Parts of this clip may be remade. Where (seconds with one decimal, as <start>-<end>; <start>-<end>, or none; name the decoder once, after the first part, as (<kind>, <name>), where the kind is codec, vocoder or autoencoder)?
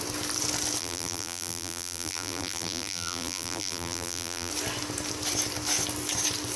0.8-4.5 (vocoder, BigVGAN v2)